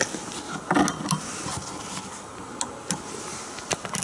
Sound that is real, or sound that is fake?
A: real